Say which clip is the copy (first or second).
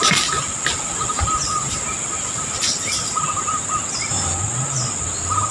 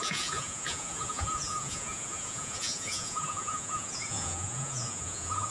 second